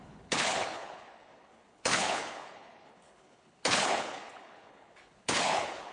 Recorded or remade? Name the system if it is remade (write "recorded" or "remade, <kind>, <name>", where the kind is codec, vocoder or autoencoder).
remade, codec, HILCodec